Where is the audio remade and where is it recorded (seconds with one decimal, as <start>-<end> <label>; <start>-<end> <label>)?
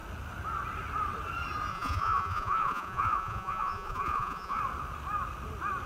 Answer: 0.0-1.7 recorded; 1.7-4.6 remade; 4.6-5.9 recorded